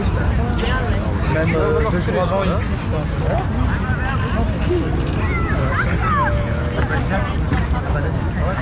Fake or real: real